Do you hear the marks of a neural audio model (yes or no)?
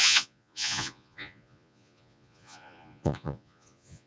yes